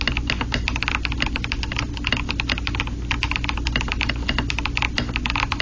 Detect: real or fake real